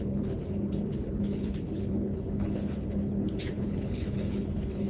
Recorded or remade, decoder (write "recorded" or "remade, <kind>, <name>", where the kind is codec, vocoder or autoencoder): remade, codec, HILCodec